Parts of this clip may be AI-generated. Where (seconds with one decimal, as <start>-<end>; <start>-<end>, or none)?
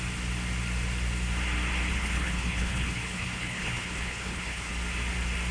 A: 1.9-4.7